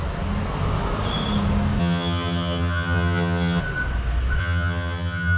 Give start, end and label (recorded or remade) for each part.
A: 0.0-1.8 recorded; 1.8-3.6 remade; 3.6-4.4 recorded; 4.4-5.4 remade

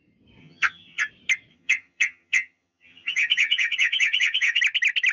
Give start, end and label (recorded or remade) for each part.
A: 0.0-0.4 recorded; 0.4-1.1 remade; 1.1-1.5 recorded; 1.5-4.6 remade; 4.6-5.1 recorded

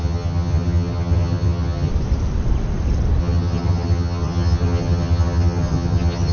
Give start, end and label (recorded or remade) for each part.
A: 0.0-1.9 remade; 1.9-3.2 recorded; 3.2-6.3 remade

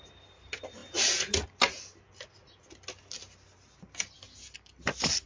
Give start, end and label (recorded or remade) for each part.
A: 0.0-5.3 recorded